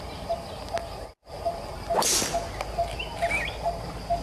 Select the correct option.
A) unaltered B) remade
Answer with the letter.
A